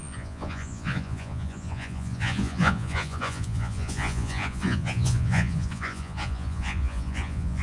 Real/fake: fake